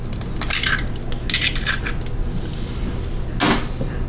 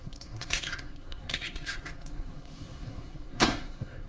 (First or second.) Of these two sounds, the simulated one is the second